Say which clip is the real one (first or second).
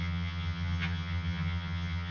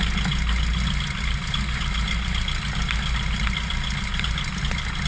second